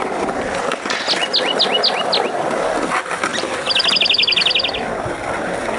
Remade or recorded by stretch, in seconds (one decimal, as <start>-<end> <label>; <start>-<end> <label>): 0.0-5.8 recorded